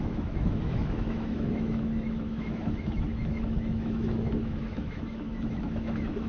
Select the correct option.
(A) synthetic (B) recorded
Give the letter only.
A